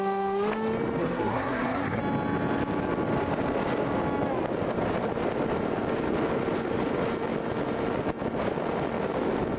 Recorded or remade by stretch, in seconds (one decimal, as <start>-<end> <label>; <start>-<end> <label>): 0.0-1.0 recorded; 1.0-2.0 remade; 2.0-9.6 recorded